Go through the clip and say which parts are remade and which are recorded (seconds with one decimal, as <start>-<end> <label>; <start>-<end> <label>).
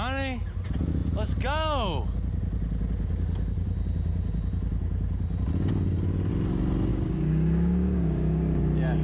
0.0-6.9 recorded; 6.9-8.6 remade; 8.6-9.0 recorded